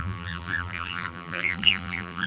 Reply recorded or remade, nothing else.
remade